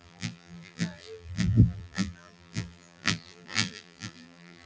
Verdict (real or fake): fake